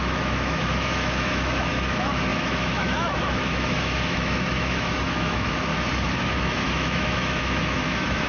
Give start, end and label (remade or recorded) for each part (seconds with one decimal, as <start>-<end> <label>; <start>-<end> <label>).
0.0-5.7 remade; 5.7-6.2 recorded; 6.2-8.3 remade